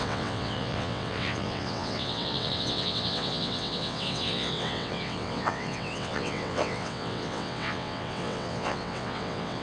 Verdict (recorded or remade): remade